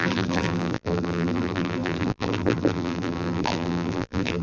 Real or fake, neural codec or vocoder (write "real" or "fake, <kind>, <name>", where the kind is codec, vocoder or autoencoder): fake, vocoder, BigVGAN v2